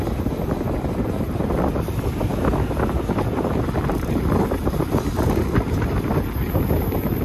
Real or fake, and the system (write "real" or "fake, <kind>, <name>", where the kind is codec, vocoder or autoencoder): real